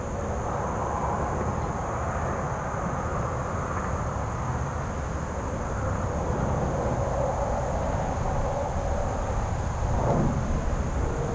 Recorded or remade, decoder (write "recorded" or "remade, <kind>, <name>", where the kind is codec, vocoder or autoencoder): recorded